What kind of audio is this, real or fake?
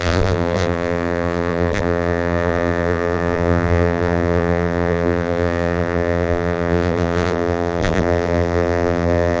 fake